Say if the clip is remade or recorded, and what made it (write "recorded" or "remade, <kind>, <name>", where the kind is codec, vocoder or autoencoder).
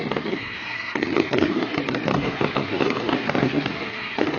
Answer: remade, codec, SNAC